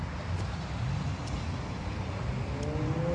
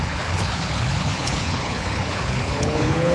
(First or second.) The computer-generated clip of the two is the second